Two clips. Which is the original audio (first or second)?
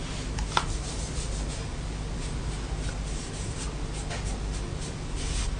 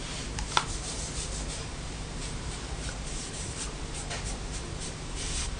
first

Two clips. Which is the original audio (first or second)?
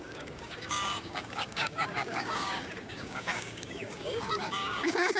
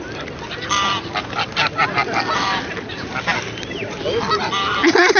second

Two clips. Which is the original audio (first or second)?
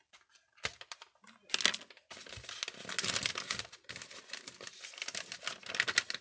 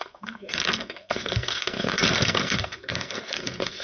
first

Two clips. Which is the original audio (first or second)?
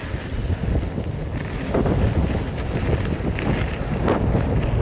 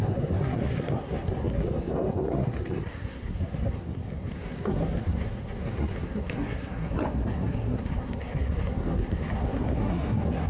first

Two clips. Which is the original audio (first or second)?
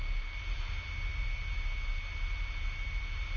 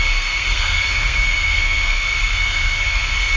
first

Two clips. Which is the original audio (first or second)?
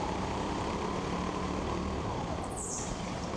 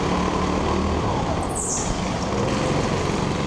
second